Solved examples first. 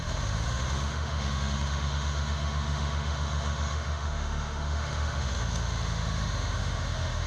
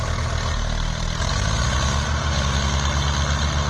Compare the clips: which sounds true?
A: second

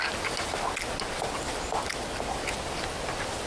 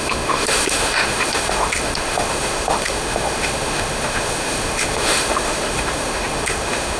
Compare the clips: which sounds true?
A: first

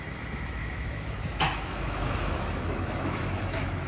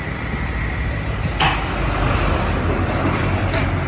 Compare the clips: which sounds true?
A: second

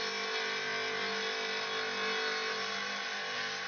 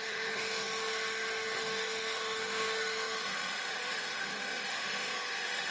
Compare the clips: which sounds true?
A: first